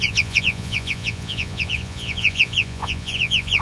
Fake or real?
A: fake